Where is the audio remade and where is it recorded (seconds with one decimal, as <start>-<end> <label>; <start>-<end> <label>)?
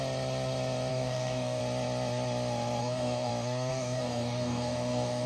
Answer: 0.0-0.9 recorded; 0.9-1.6 remade; 1.6-2.8 recorded; 2.8-3.3 remade; 3.3-3.7 recorded; 3.7-5.3 remade